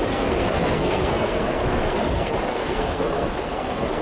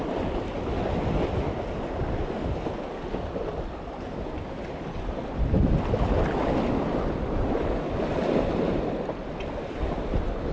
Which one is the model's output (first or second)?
first